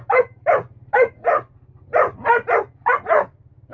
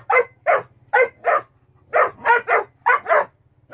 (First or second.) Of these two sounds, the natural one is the second